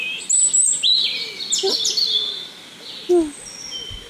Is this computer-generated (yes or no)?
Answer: no